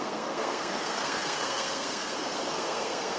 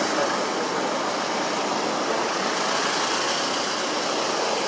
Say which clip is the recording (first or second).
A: second